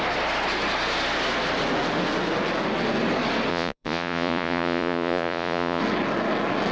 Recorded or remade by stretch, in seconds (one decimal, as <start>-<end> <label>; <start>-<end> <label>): 0.0-3.5 recorded; 3.5-5.8 remade; 5.8-6.7 recorded